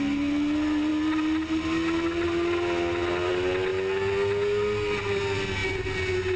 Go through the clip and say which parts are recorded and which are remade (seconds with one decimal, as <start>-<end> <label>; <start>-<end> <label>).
0.0-6.4 recorded